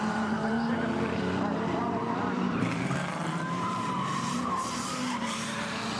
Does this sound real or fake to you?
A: fake